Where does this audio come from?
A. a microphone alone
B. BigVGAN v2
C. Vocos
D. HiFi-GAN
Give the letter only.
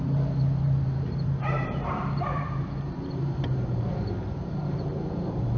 B